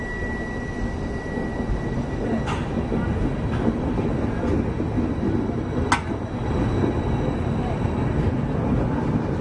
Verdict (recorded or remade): recorded